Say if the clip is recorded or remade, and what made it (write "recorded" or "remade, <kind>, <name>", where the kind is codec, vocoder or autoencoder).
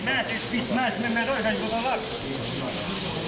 recorded